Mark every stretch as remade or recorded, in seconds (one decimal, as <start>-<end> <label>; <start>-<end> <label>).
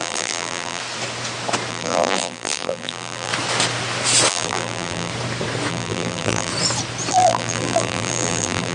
0.0-0.8 remade; 0.8-1.7 recorded; 1.7-3.3 remade; 3.3-4.3 recorded; 4.3-5.1 remade; 5.1-5.7 recorded; 5.7-6.5 remade; 6.5-7.1 recorded; 7.1-8.7 remade